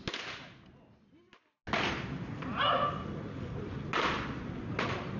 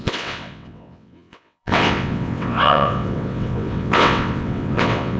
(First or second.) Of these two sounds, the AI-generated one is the second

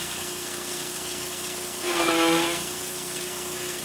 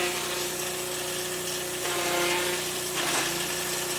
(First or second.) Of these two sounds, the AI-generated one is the first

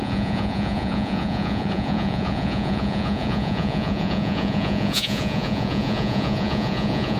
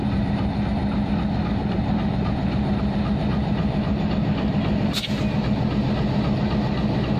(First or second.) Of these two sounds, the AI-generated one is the first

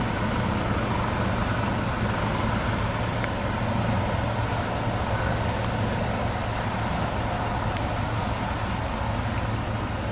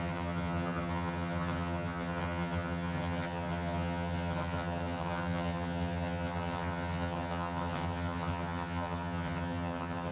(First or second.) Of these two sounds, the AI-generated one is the second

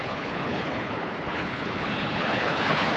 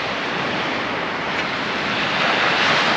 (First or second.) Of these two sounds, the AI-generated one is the first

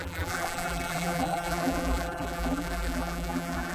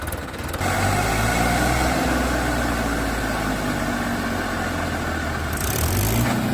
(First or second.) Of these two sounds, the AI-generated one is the first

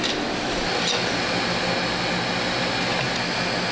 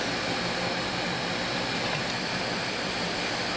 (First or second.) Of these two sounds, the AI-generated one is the second